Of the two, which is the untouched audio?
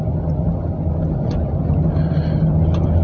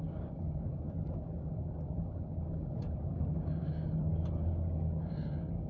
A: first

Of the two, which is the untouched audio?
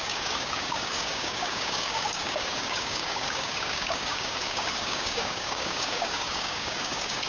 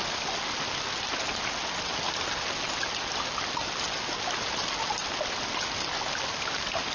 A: second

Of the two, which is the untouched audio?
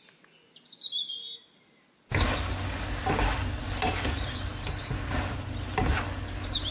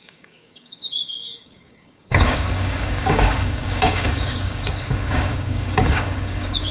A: first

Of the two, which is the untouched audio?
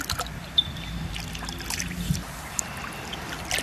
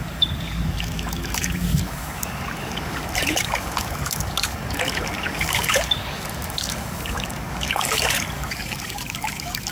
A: first